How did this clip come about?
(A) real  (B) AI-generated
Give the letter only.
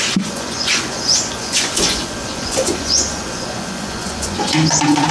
B